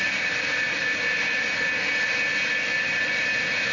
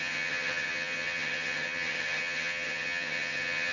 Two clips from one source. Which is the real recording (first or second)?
first